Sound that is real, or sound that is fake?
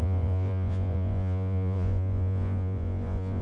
fake